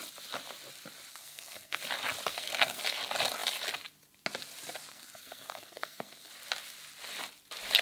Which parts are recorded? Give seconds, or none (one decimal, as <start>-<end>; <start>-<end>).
0.0-1.1; 1.8-2.3; 2.8-4.9; 6.3-7.8